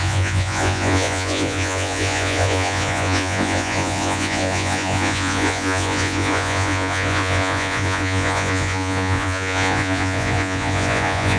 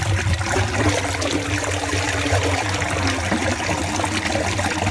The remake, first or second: first